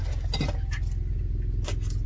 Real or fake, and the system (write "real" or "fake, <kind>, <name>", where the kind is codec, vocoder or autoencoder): real